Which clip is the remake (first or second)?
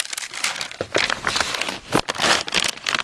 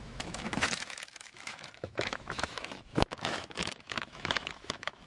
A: second